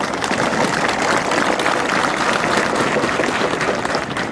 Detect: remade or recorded recorded